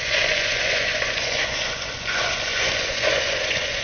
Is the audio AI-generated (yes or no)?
yes